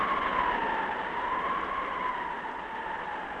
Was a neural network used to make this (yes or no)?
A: no